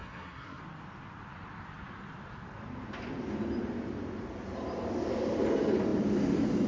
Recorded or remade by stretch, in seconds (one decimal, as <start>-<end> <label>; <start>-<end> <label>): 0.0-0.6 remade; 0.6-6.7 recorded